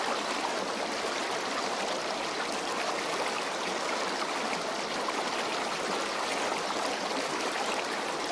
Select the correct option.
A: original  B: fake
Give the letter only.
A